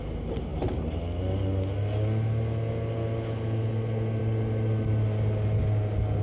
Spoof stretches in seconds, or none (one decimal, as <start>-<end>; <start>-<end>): none

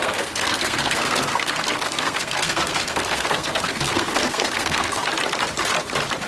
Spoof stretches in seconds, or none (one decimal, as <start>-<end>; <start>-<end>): 0.0-5.0

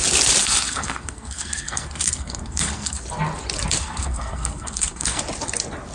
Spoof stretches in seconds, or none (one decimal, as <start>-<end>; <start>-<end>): 0.4-3.0; 3.8-5.2

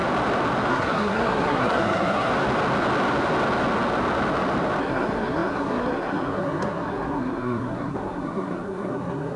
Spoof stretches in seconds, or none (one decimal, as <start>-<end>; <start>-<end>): 0.7-2.3; 4.8-9.4

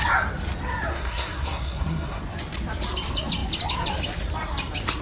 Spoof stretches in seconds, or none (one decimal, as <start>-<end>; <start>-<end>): 0.9-2.2

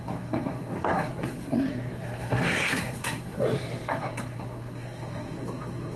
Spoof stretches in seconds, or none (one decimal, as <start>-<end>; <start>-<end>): 0.0-6.0

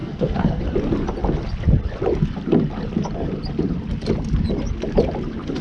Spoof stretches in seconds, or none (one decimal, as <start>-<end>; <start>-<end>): 0.0-0.6